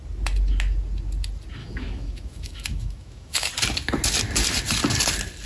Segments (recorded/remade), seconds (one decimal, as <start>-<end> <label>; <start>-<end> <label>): 0.0-1.6 recorded; 1.6-3.5 remade; 3.5-5.5 recorded

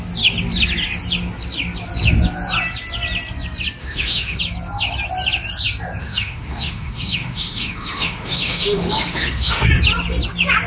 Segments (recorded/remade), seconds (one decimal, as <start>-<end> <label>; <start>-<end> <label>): 0.0-3.8 recorded; 3.8-4.4 remade; 4.4-6.0 recorded; 6.0-9.7 remade; 9.7-10.7 recorded